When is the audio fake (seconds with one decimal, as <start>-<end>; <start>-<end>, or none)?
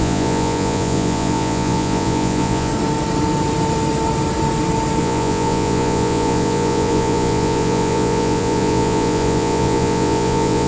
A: 0.0-2.7; 5.0-10.7